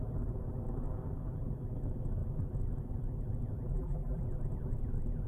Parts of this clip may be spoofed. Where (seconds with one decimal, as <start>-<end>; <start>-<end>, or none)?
3.7-4.2